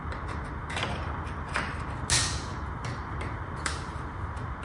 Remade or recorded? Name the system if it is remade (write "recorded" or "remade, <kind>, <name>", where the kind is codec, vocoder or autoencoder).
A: recorded